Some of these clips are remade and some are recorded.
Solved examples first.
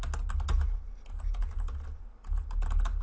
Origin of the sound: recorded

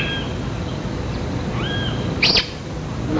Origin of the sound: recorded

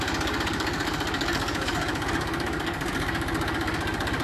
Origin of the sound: remade